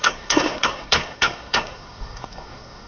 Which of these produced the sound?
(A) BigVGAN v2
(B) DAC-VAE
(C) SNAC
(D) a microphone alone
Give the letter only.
C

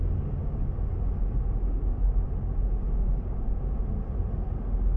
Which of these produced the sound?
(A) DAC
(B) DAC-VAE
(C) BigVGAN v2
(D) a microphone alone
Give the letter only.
D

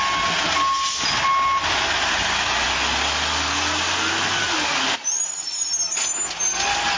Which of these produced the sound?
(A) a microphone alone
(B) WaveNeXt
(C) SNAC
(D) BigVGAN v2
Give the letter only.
A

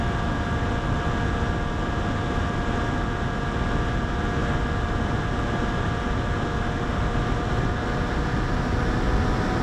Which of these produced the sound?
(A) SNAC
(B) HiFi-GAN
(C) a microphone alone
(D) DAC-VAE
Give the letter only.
C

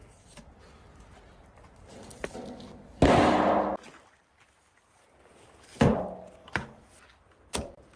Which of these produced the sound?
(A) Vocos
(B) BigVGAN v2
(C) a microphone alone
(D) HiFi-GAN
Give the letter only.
C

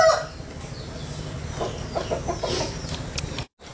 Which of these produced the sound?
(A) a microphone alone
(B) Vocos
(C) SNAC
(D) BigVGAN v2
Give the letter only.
A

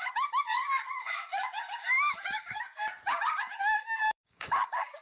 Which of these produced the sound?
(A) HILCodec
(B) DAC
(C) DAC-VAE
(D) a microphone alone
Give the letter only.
B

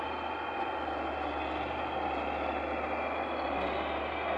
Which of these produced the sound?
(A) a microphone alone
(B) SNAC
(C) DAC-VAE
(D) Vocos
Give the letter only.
A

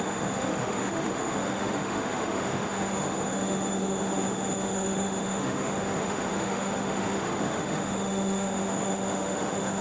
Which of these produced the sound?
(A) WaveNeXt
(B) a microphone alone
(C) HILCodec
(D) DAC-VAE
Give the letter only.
D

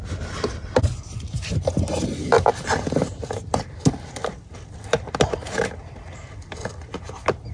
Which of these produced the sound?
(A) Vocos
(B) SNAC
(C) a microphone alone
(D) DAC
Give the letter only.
C